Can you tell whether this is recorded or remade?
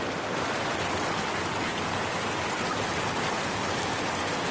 recorded